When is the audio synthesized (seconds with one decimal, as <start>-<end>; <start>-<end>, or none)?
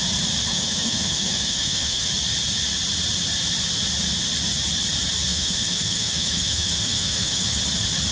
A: 0.5-2.1; 5.3-7.6